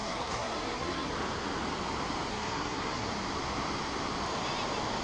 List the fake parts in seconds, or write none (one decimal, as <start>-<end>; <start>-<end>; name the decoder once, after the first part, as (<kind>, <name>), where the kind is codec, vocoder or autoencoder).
0.0-1.1 (codec, SNAC); 2.3-3.1